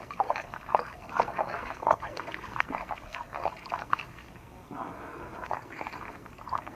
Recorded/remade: remade